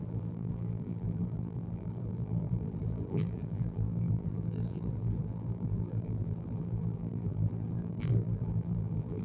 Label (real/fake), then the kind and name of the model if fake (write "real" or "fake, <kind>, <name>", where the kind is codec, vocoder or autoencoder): fake, vocoder, BigVGAN v2